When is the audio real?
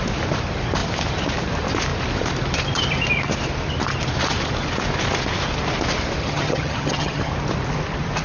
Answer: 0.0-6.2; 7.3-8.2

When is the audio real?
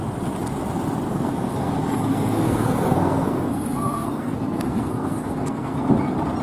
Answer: 0.0-1.1; 1.7-2.1; 5.9-6.4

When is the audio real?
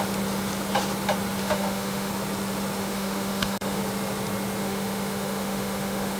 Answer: 0.0-1.4; 2.1-2.8; 3.8-4.6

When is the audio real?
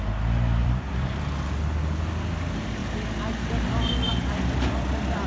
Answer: 0.0-0.6; 1.2-5.3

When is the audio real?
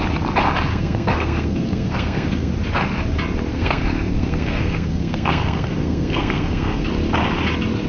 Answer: 0.0-0.7; 2.5-3.5; 6.9-7.9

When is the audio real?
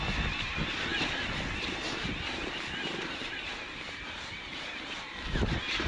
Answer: 0.0-5.9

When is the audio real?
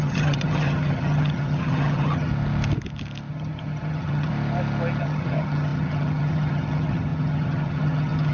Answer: 2.3-3.3; 4.3-5.0